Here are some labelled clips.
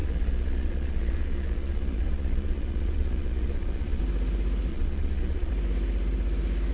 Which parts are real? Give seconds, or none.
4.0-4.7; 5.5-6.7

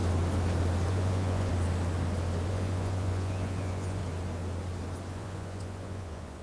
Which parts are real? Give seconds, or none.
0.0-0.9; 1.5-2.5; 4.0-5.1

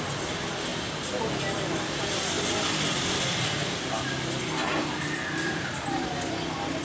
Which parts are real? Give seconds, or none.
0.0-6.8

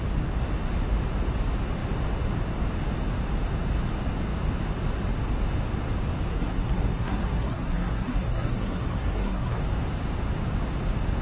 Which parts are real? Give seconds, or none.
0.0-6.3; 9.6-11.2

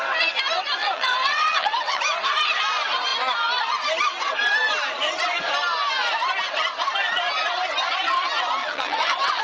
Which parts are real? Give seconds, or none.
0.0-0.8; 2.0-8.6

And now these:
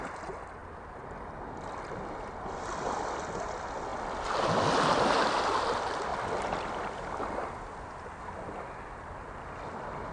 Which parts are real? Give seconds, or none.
0.0-10.1